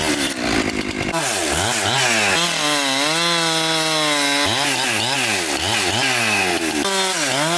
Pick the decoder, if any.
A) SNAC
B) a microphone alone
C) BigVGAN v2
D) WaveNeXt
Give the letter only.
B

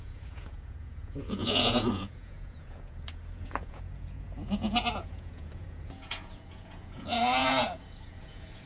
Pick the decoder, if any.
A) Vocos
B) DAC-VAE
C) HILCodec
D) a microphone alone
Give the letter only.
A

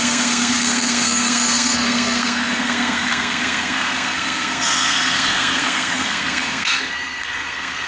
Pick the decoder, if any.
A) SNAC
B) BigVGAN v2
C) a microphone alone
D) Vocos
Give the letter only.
A